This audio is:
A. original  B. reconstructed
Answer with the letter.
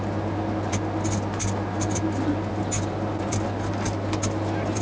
A